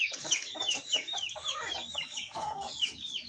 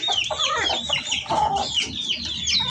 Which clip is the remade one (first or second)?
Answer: first